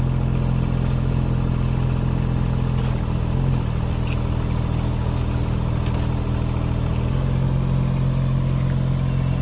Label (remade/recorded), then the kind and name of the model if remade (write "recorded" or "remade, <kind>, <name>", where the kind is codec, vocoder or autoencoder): recorded